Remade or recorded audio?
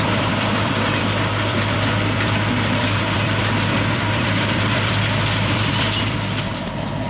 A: remade